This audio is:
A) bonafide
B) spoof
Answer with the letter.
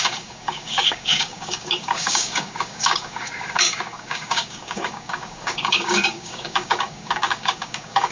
B